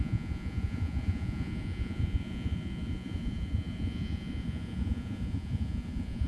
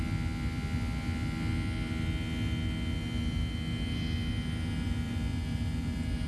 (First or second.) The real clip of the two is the second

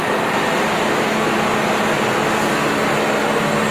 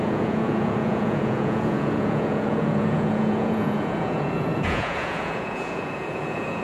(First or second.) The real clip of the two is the first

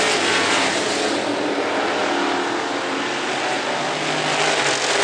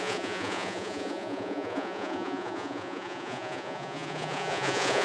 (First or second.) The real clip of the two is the first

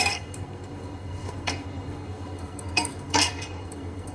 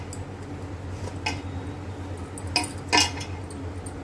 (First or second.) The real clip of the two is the second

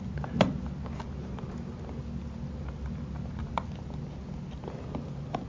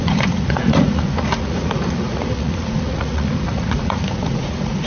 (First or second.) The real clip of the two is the first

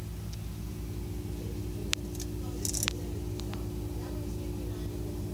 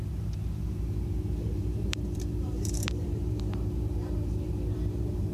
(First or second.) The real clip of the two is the first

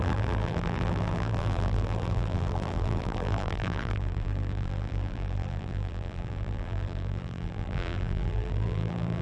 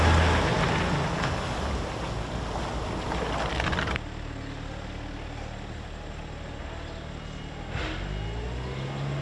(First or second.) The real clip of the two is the second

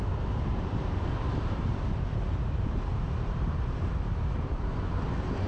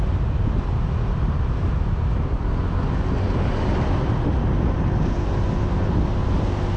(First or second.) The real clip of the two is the second